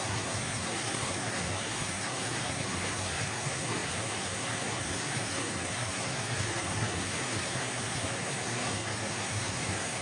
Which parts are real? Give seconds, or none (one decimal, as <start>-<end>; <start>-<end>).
none